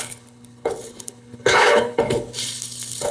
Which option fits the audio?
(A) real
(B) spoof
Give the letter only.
B